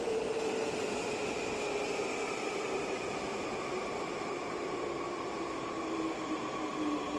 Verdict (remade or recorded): recorded